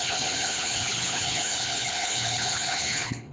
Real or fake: fake